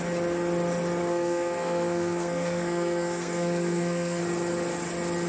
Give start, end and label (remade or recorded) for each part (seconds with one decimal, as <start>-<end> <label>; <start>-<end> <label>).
0.0-1.0 recorded; 1.0-4.2 remade; 4.2-5.3 recorded